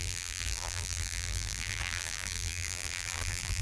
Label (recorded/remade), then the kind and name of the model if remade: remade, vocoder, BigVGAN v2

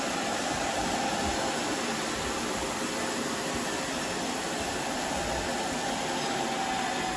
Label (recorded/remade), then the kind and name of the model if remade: recorded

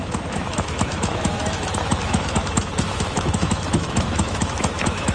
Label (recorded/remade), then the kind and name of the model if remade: remade, autoencoder, DAC-VAE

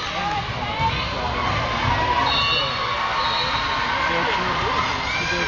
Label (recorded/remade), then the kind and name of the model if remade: recorded